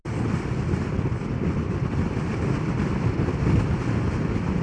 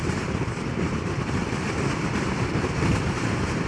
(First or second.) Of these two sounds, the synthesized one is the second